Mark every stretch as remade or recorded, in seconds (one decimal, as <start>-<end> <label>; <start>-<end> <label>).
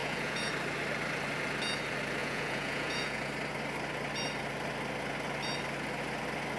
0.0-0.5 remade; 0.5-2.2 recorded; 2.2-3.3 remade; 3.3-6.6 recorded